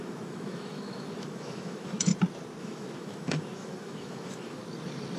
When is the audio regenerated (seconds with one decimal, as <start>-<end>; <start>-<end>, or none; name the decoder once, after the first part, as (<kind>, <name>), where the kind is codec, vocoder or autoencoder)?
0.0-2.1 (autoencoder, DAC-VAE); 2.6-4.6

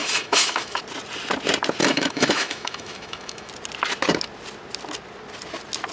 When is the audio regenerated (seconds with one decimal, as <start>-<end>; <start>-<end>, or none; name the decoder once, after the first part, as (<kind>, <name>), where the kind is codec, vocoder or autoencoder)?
0.0-0.8 (autoencoder, DAC-VAE); 1.8-3.5

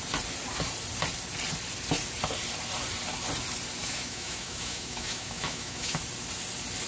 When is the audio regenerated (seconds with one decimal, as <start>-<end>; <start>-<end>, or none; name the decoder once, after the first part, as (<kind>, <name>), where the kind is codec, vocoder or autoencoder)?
3.8-6.0 (autoencoder, DAC-VAE)

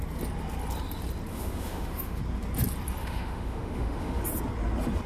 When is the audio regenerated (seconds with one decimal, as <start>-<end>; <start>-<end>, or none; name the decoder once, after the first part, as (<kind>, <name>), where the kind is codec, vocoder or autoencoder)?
1.3-2.2 (autoencoder, DAC-VAE); 3.0-4.2